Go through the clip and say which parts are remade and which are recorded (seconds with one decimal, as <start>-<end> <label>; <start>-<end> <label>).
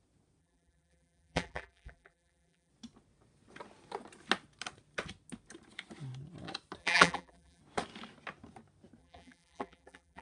0.0-0.4 recorded; 0.4-2.7 remade; 2.7-6.8 recorded; 6.8-7.6 remade; 7.6-9.0 recorded; 9.0-10.2 remade